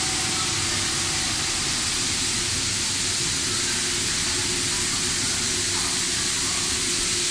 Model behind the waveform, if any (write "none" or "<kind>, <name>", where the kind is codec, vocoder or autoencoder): none